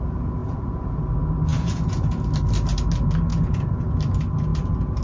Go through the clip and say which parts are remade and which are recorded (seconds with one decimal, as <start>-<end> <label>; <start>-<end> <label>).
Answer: 0.0-0.4 recorded; 0.4-1.0 remade; 1.0-1.5 recorded; 1.5-2.2 remade; 2.2-3.3 recorded; 3.3-4.0 remade; 4.0-4.5 recorded; 4.5-5.0 remade